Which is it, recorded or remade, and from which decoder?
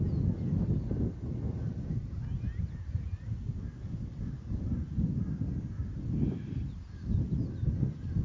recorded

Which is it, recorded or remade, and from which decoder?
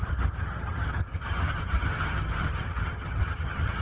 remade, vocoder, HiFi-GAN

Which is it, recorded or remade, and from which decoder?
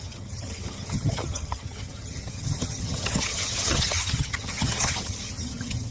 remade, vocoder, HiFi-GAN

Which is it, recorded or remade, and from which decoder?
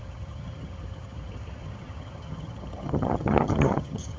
remade, vocoder, HiFi-GAN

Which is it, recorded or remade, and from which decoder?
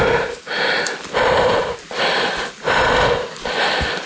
recorded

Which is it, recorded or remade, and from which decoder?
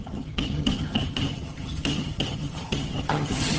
remade, vocoder, HiFi-GAN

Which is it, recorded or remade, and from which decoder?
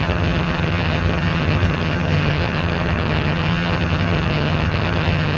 remade, vocoder, HiFi-GAN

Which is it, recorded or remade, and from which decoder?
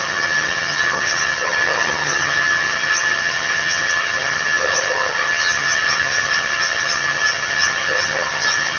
remade, vocoder, HiFi-GAN